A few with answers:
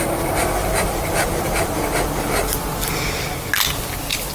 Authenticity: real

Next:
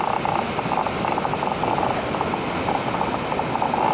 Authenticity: real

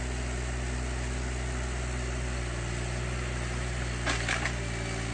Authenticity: real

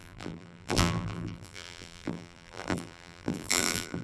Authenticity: fake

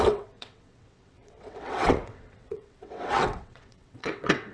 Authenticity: fake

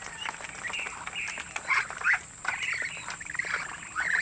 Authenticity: real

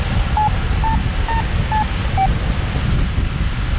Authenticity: real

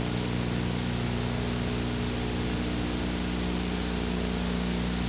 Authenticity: real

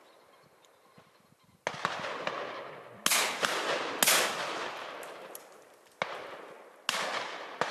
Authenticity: real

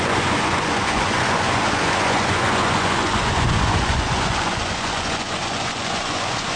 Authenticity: fake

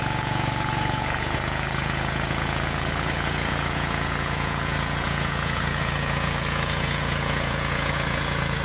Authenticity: fake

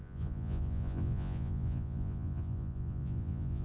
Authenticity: fake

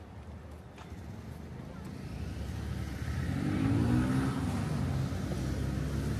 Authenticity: real